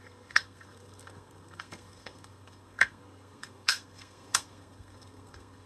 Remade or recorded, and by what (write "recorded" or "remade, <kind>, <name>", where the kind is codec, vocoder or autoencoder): remade, codec, SNAC